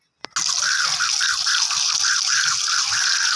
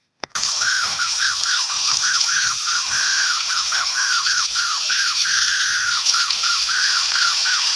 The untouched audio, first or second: first